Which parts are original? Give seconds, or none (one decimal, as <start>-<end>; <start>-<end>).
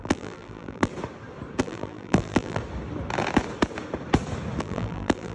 0.9-1.6; 2.6-4.6